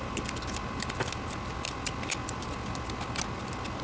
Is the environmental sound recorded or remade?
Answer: recorded